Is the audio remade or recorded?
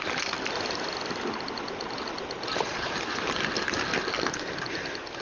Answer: remade